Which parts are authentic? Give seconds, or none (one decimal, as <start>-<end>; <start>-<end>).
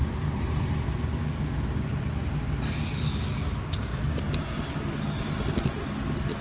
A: 0.0-3.9; 4.4-6.4